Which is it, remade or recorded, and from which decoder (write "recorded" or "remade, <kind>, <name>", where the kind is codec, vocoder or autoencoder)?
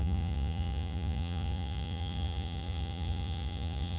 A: remade, vocoder, Vocos